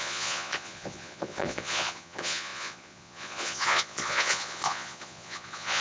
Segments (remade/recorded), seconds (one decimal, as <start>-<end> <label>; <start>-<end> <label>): 0.0-5.8 remade